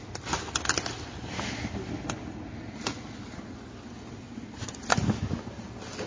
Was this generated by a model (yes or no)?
no